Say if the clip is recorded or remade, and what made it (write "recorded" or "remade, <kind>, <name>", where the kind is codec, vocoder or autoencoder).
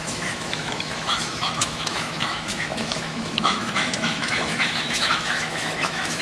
remade, autoencoder, DAC-VAE